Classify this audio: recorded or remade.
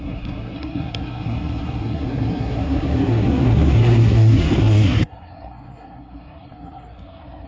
remade